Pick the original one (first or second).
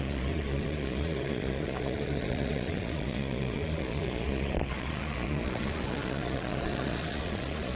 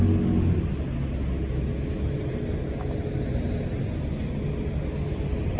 second